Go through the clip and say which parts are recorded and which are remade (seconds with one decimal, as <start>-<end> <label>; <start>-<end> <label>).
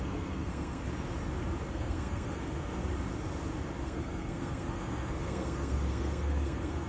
0.0-0.8 remade; 0.8-1.7 recorded; 1.7-2.8 remade; 2.8-3.8 recorded; 3.8-6.9 remade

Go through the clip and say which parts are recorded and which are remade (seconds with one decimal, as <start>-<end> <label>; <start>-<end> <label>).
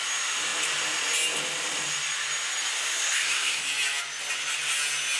0.0-2.7 recorded; 2.7-3.6 remade; 3.6-5.2 recorded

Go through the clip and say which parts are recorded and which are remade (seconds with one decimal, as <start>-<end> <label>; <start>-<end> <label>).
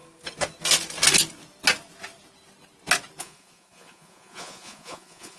0.0-3.2 recorded; 3.2-5.4 remade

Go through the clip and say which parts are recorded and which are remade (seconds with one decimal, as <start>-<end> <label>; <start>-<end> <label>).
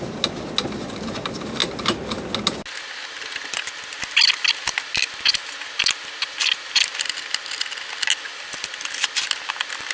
0.0-9.9 recorded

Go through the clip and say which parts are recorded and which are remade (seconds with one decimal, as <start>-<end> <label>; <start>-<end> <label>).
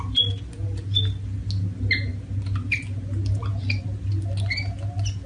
0.0-5.3 recorded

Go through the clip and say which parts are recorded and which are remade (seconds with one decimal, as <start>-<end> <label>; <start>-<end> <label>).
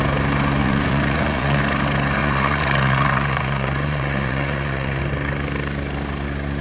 0.0-0.6 recorded; 0.6-1.6 remade; 1.6-2.2 recorded; 2.2-5.0 remade; 5.0-6.6 recorded